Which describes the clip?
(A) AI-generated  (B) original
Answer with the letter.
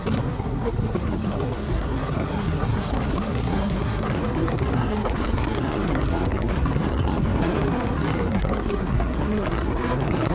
A